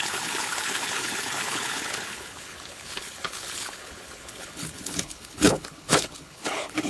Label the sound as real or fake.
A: fake